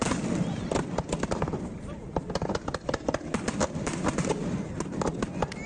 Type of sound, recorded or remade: remade